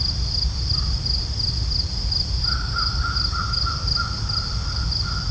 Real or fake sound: real